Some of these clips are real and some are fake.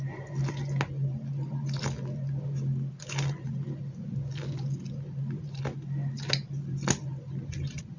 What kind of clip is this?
real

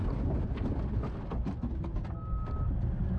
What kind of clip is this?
real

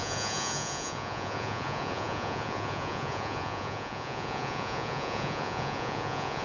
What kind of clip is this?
fake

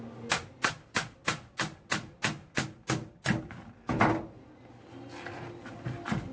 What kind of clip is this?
real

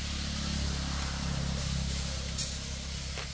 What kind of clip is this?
real